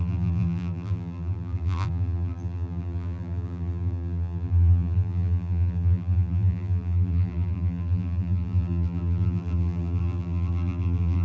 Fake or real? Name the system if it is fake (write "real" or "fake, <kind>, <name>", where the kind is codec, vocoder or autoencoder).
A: fake, vocoder, BigVGAN v2